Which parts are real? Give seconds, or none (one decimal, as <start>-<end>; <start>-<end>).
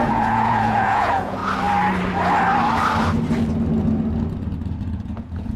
1.4-4.8